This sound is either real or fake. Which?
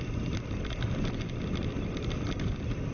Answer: real